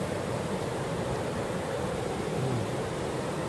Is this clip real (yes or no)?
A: yes